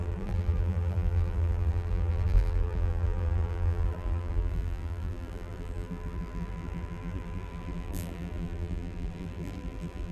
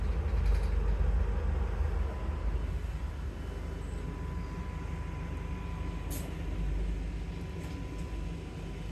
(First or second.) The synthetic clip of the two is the first